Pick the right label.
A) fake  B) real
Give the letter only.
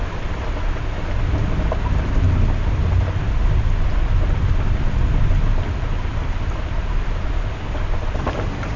B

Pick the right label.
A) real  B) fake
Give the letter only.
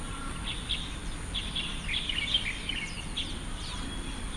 A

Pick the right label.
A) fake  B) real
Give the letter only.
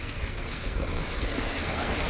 A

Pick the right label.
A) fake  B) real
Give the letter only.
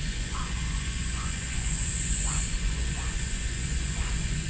A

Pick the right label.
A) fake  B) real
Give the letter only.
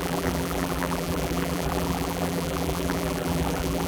A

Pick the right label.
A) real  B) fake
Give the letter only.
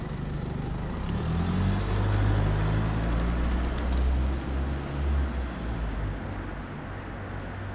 A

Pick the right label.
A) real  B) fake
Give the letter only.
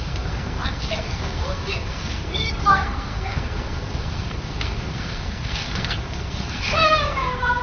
B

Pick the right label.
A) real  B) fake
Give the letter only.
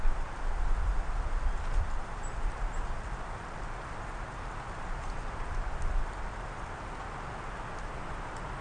A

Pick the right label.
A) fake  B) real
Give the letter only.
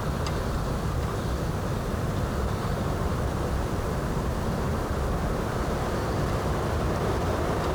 A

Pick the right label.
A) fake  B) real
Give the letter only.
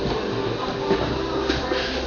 B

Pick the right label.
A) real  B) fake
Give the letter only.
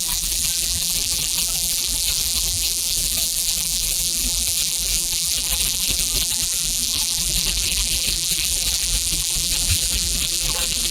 B